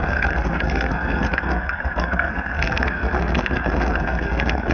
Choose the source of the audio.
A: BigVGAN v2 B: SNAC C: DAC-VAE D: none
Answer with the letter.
B